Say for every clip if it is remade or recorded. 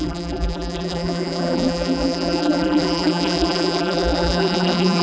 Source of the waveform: remade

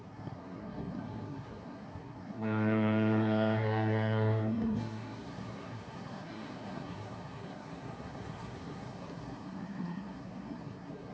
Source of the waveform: remade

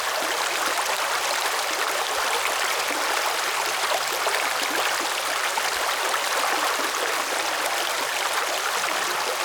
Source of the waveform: recorded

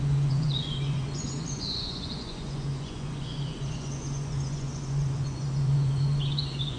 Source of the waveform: remade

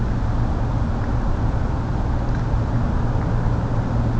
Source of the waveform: recorded